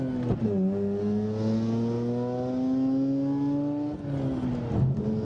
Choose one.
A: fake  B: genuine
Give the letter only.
B